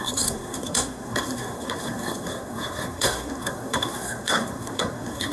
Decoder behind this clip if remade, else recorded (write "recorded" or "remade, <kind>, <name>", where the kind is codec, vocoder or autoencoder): remade, codec, SNAC